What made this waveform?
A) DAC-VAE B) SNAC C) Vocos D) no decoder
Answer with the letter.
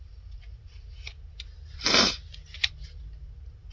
D